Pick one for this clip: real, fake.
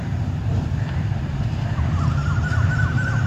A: fake